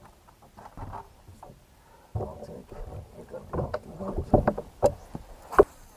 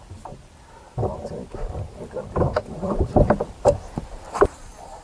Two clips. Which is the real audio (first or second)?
first